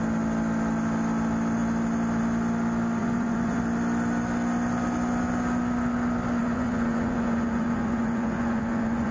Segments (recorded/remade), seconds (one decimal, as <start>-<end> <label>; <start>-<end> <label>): 0.0-3.0 recorded; 3.0-3.6 remade; 3.6-6.4 recorded; 6.4-9.1 remade